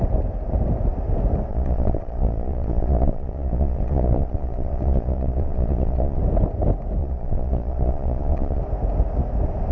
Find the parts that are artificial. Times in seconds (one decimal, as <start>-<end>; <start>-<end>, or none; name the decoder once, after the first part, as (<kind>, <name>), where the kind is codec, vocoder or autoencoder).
1.5-6.2 (vocoder, Vocos); 7.0-8.6